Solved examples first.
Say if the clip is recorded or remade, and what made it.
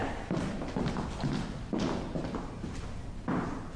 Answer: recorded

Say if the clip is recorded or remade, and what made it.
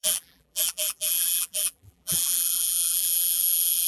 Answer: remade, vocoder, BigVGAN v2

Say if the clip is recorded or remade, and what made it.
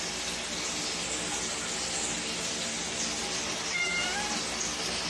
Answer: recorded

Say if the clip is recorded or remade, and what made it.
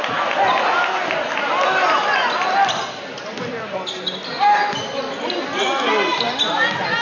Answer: recorded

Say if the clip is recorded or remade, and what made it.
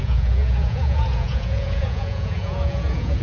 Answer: remade, vocoder, Vocos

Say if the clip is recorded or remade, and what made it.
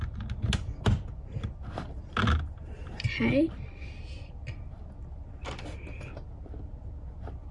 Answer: recorded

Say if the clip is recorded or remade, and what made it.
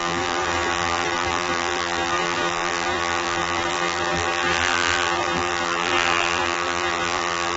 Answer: remade, vocoder, BigVGAN v2